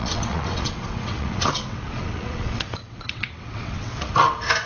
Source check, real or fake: fake